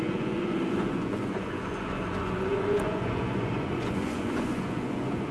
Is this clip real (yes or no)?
no